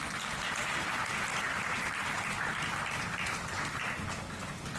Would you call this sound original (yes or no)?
yes